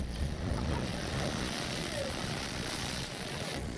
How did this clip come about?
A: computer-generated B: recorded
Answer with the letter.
A